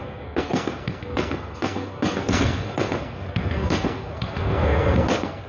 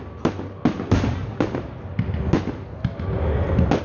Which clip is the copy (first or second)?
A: first